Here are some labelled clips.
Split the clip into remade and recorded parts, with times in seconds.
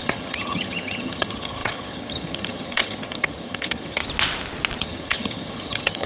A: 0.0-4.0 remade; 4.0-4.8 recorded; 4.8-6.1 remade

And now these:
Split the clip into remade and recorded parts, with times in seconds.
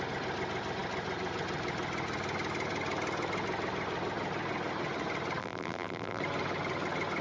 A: 0.0-5.4 recorded; 5.4-6.2 remade; 6.2-7.2 recorded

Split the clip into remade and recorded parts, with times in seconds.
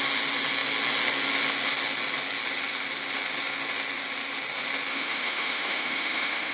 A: 0.0-4.9 recorded; 4.9-6.5 remade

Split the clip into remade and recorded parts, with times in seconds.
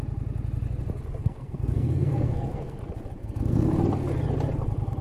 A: 0.0-1.2 recorded; 1.2-2.8 remade; 2.8-3.2 recorded; 3.2-3.7 remade; 3.7-5.0 recorded